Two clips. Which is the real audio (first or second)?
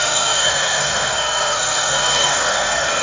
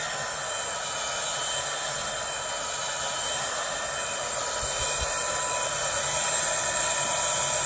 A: second